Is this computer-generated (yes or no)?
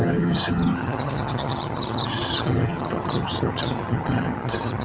yes